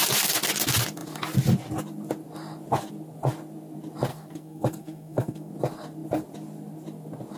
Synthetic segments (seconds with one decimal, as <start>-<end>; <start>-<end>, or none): 4.1-5.5